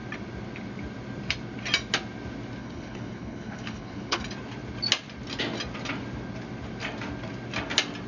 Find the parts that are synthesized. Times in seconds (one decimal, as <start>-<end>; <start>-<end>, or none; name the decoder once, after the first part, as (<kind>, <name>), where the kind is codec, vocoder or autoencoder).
2.6-4.2 (codec, HILCodec)

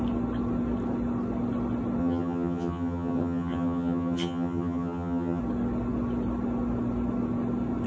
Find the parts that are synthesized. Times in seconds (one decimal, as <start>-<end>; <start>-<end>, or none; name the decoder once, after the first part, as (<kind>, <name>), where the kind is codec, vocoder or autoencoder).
2.0-5.4 (vocoder, HiFi-GAN)